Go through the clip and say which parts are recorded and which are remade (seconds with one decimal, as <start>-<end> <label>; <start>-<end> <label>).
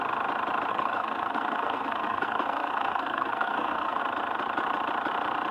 0.0-0.7 recorded; 0.7-4.0 remade; 4.0-5.5 recorded